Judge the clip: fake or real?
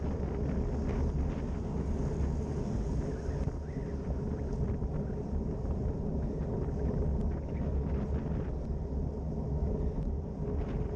real